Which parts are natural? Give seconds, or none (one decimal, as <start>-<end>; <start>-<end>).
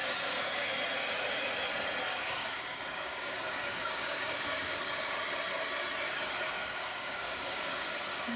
0.7-2.1; 5.2-6.6; 8.0-8.4